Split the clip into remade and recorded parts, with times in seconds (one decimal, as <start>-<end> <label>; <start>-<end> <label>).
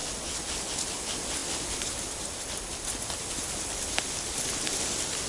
0.0-0.7 remade; 0.7-1.4 recorded; 1.4-4.6 remade; 4.6-5.3 recorded